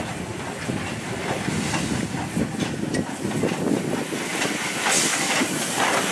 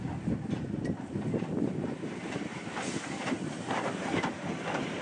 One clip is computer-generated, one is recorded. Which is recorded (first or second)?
first